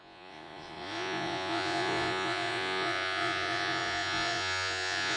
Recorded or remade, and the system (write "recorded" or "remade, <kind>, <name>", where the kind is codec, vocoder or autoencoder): remade, vocoder, Vocos